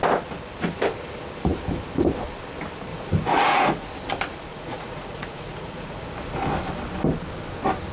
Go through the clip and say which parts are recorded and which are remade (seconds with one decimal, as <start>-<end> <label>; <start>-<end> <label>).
0.0-2.9 recorded; 2.9-3.9 remade; 3.9-4.5 recorded; 4.5-6.0 remade; 6.0-7.9 recorded